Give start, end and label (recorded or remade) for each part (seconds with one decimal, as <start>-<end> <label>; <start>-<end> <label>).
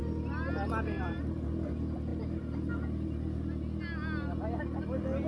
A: 0.0-2.1 recorded; 2.1-2.7 remade; 2.7-5.3 recorded